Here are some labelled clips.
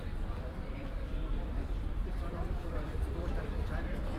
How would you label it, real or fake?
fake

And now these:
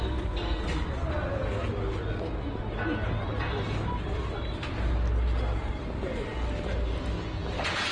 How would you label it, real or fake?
real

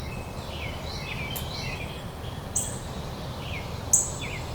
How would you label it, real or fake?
real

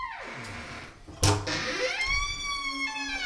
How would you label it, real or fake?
real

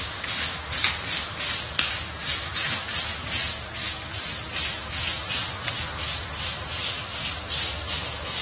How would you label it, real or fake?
fake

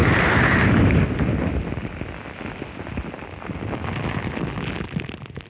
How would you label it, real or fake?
real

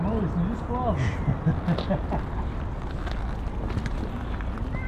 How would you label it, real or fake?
real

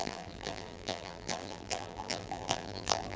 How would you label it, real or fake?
fake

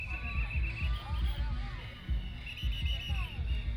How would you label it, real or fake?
real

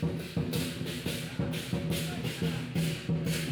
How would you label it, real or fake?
real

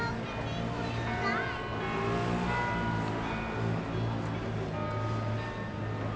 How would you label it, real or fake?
real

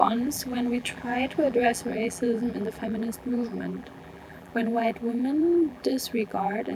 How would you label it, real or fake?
fake